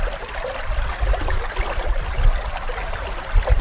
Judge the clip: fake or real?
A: real